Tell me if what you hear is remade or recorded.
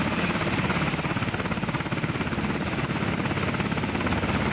recorded